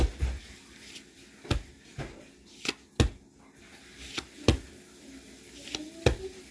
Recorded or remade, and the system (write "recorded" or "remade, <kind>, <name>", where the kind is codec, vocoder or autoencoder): recorded